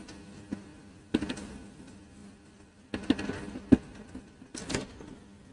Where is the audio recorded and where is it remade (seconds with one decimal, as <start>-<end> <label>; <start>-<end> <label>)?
0.0-5.5 recorded